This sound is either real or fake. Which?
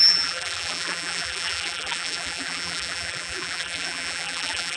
fake